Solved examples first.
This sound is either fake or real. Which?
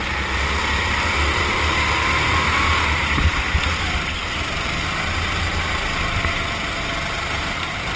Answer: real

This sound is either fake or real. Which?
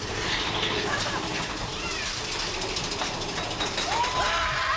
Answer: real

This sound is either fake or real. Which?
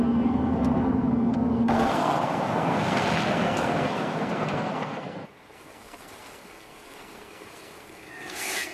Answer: fake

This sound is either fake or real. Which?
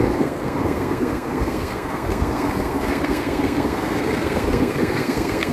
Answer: fake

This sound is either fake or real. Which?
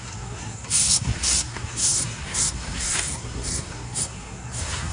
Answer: fake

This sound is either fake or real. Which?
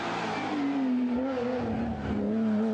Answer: real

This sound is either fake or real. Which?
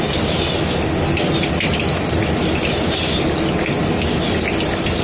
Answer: real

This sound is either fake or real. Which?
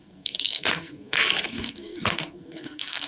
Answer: fake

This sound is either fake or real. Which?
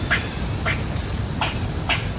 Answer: real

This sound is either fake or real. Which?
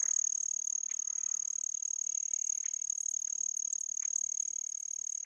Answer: real